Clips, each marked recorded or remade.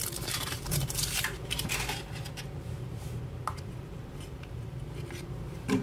remade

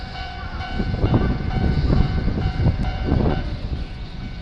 remade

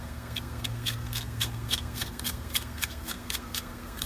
remade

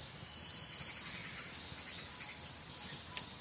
recorded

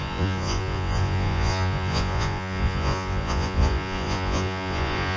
remade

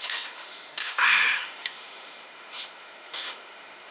remade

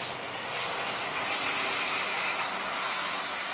recorded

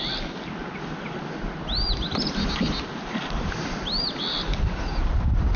recorded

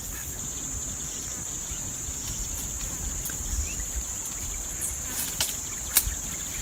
recorded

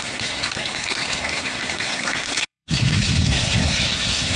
remade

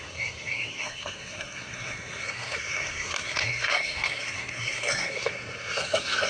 remade